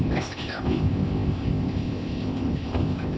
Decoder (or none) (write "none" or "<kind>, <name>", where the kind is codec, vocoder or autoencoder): codec, ZipCodec